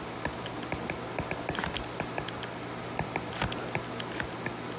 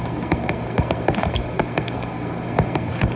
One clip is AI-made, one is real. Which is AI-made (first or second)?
second